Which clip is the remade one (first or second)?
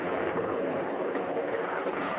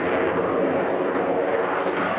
first